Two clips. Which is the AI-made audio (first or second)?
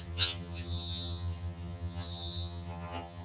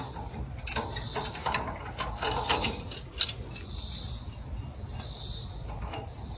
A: first